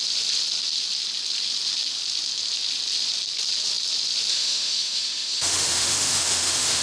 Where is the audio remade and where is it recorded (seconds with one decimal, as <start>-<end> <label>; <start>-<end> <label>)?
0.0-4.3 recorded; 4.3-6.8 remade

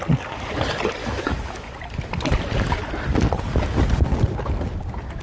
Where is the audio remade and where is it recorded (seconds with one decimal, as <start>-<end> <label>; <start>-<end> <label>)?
0.0-1.0 recorded; 1.0-1.7 remade; 1.7-5.2 recorded

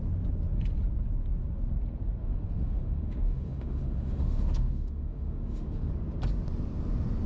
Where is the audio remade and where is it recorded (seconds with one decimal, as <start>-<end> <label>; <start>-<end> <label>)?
0.0-2.2 recorded; 2.2-5.9 remade; 5.9-7.3 recorded